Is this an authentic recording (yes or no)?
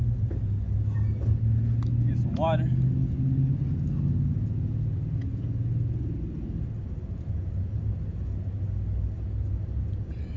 yes